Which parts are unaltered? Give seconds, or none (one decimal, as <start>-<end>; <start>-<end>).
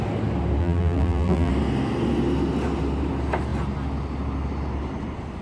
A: 0.0-0.6; 1.5-5.4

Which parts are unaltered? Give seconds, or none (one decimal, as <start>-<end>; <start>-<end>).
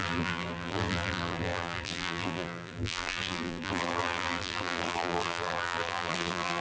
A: none